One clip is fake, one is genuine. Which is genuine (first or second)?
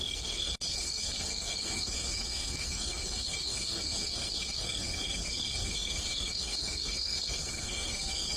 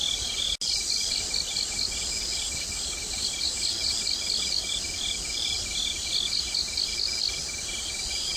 second